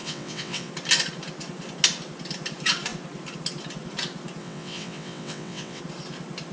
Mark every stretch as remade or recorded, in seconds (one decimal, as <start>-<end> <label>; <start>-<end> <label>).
0.0-0.7 remade; 0.7-4.4 recorded; 4.4-5.8 remade; 5.8-6.5 recorded